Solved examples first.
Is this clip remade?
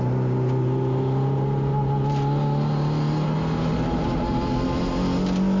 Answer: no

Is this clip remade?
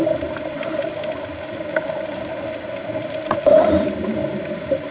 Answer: no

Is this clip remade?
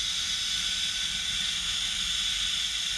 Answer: no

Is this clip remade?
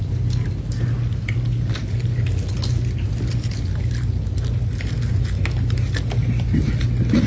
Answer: no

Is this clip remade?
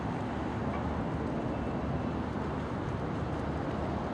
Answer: no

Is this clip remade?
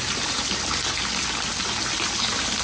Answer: no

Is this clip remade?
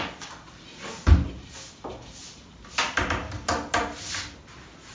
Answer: no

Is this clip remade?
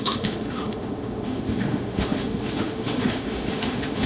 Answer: yes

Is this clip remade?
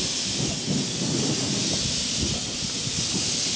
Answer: no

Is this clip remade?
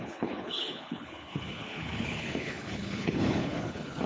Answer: yes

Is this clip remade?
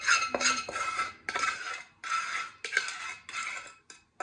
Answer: no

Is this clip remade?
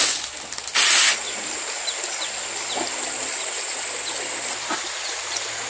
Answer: no